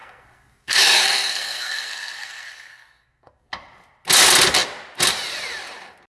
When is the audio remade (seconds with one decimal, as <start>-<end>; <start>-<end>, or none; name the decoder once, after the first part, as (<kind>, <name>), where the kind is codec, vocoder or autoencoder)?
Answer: 0.0-3.5 (codec, SNAC)